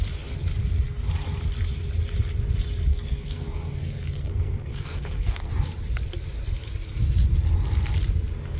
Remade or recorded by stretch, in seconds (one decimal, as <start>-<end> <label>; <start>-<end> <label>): 0.0-2.9 recorded; 2.9-5.5 remade; 5.5-8.6 recorded

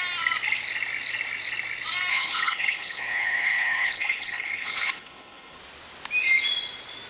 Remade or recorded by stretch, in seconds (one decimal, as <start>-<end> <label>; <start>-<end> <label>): 0.0-2.1 recorded; 2.1-5.6 remade; 5.6-7.1 recorded

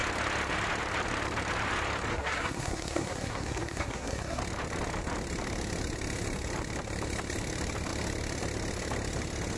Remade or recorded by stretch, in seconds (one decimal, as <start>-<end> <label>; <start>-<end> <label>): 0.0-2.1 recorded; 2.1-4.4 remade; 4.4-9.6 recorded

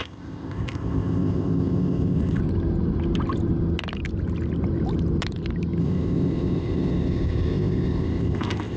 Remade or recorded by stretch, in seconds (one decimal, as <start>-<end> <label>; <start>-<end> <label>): 0.0-2.4 remade; 2.4-5.8 recorded; 5.8-8.8 remade